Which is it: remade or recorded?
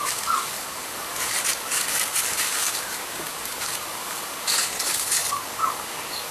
remade